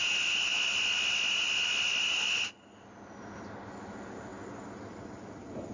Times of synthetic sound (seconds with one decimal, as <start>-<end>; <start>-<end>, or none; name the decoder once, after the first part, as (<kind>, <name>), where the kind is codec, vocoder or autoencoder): none